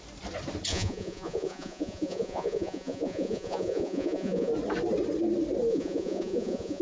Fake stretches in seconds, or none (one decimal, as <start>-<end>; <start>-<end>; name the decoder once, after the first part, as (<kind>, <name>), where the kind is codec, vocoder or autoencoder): 0.7-4.5 (vocoder, Vocos); 5.7-6.8